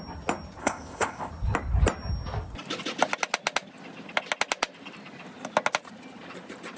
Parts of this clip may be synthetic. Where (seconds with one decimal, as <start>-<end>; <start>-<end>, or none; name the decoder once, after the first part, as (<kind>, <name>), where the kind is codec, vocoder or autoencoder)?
0.6-1.3 (codec, ZipCodec)